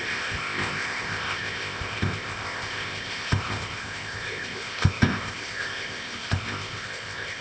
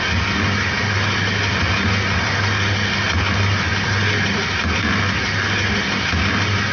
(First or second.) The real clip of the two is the second